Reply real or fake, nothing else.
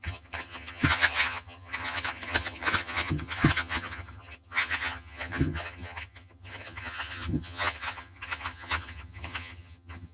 fake